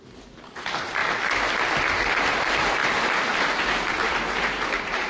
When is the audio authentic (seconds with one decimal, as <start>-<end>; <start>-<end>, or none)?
1.0-2.1; 2.8-3.4